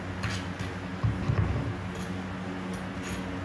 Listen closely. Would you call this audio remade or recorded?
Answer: recorded